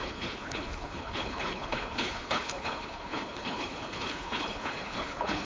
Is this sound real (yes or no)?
no